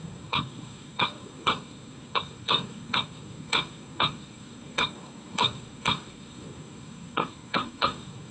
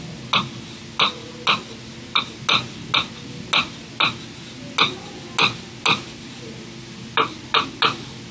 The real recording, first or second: second